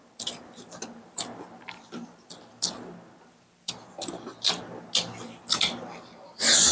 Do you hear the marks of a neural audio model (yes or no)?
no